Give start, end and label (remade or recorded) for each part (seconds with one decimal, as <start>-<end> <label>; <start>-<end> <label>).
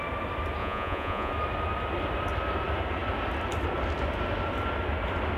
0.0-0.6 recorded; 0.6-1.3 remade; 1.3-5.4 recorded